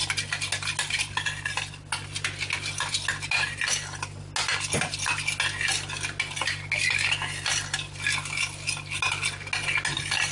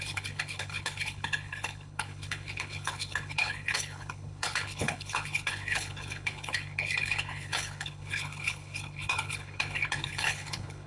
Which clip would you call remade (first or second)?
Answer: second